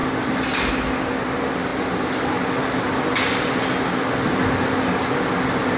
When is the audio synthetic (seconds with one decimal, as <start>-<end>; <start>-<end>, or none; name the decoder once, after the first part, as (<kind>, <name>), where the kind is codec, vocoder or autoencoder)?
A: none